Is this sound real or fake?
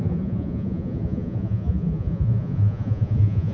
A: fake